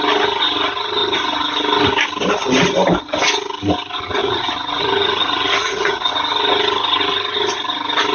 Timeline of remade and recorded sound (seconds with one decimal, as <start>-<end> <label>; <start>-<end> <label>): 0.0-4.2 recorded; 4.2-6.1 remade; 6.1-8.1 recorded